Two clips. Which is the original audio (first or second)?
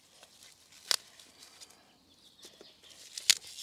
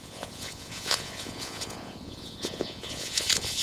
first